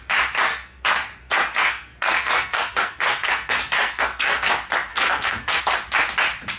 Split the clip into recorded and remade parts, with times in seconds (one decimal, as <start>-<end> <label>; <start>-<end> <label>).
0.0-0.5 recorded; 0.5-4.5 remade; 4.5-4.9 recorded; 4.9-5.6 remade; 5.6-6.6 recorded